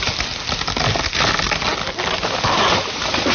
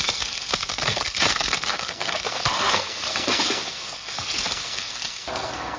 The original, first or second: first